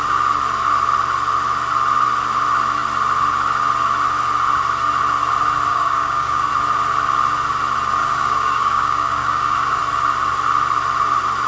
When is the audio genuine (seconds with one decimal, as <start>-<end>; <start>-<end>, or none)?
0.0-5.7; 6.5-8.0; 9.8-11.5